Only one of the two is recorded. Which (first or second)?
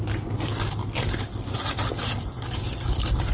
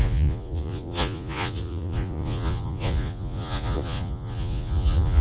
first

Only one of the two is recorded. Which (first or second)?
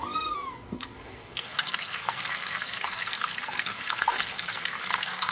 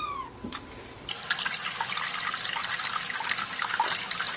second